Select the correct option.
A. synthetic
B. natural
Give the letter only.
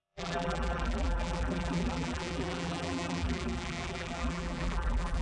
A